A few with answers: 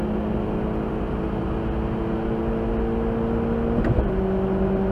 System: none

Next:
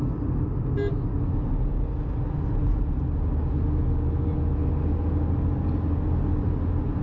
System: none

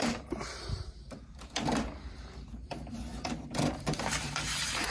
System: vocoder, BigVGAN v2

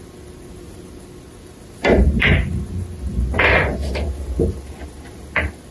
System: none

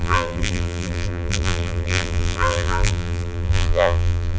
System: vocoder, BigVGAN v2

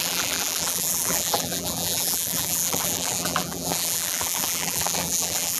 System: vocoder, BigVGAN v2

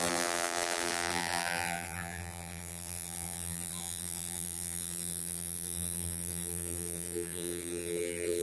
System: vocoder, BigVGAN v2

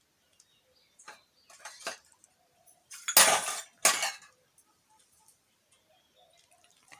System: none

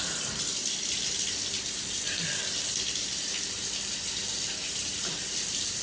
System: vocoder, BigVGAN v2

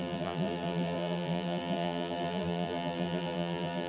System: vocoder, BigVGAN v2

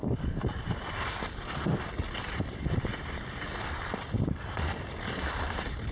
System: none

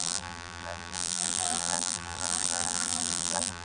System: vocoder, BigVGAN v2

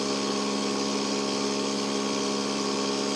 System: none